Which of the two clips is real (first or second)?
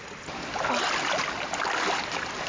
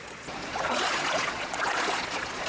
first